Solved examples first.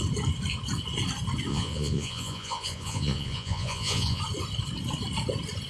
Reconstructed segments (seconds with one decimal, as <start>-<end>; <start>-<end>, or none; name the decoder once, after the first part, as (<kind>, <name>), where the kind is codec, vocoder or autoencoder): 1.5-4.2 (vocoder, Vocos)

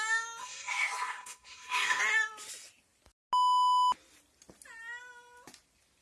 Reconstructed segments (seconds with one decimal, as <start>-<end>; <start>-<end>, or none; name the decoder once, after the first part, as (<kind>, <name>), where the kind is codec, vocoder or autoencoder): 0.4-2.0 (codec, SNAC)

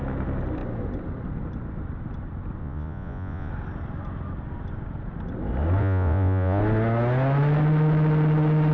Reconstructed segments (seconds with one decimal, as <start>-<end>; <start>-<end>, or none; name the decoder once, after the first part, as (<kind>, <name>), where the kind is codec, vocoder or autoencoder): 2.6-3.5 (vocoder, Vocos); 5.8-6.6

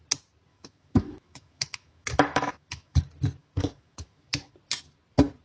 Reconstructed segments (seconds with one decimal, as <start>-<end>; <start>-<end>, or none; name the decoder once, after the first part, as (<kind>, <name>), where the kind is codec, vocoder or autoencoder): 0.5-3.0 (autoencoder, DAC-VAE); 3.4-4.5

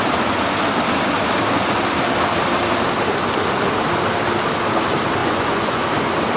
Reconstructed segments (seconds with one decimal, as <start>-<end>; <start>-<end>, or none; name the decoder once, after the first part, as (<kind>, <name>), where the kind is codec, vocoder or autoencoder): 5.2-5.8 (vocoder, Vocos)

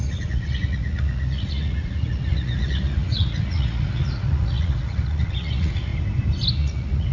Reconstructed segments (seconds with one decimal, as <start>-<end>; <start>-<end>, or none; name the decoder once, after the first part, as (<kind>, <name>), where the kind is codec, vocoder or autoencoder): 0.0-5.9 (vocoder, Vocos); 6.5-7.1

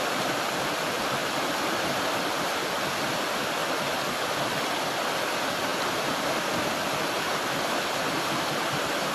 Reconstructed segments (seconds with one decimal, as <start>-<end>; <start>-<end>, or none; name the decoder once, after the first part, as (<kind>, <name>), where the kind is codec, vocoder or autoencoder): 1.2-2.0 (vocoder, BigVGAN v2)